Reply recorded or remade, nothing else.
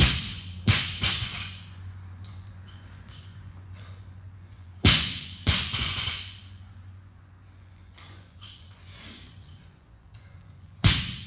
remade